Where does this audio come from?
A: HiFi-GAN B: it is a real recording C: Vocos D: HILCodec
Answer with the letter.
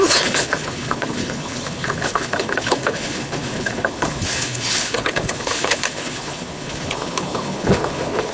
D